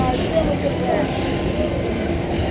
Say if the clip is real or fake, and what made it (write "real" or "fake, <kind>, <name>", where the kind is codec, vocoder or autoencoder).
real